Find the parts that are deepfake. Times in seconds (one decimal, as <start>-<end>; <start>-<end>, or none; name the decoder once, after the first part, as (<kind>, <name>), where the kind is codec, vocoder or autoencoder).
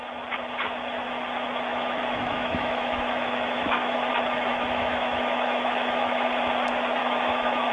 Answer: 1.7-4.1 (autoencoder, DAC-VAE); 4.5-6.3; 7.0-7.7